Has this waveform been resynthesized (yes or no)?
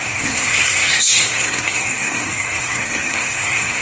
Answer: yes